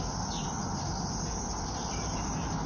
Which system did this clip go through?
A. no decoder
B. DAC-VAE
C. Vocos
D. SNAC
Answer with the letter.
A